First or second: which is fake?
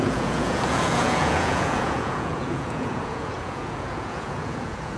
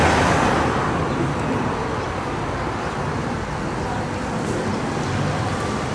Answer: first